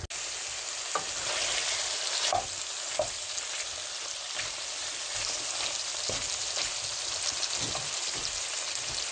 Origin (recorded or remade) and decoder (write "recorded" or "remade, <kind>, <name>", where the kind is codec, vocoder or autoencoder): recorded